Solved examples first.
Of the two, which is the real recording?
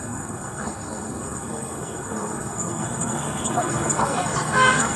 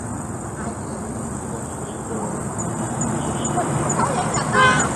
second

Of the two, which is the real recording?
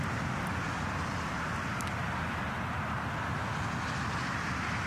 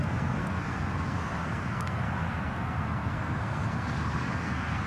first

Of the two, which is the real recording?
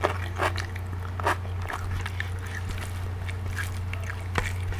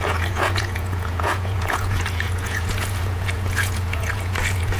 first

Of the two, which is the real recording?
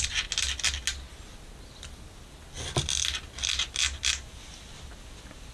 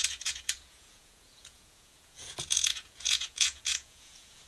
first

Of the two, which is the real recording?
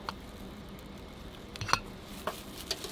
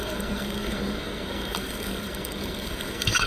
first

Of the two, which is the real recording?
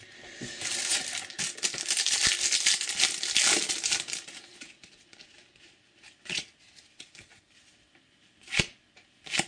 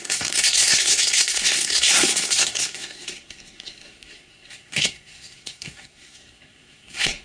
first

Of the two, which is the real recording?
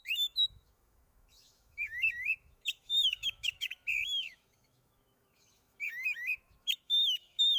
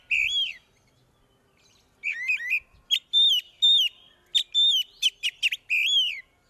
second